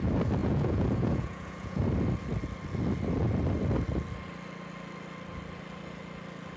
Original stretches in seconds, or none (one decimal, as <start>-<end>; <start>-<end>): 0.0-0.4; 1.8-6.6

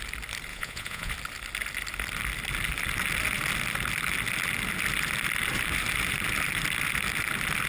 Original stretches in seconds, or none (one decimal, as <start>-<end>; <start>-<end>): 0.0-0.5; 1.1-7.7